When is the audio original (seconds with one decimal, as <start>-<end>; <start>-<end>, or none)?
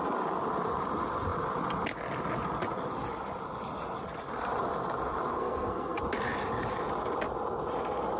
0.0-5.3; 6.0-8.2